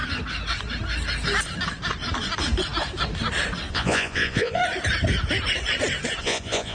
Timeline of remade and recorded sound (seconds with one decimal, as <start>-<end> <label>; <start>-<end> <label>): 0.0-3.7 recorded; 3.7-4.6 remade; 4.6-6.2 recorded; 6.2-6.7 remade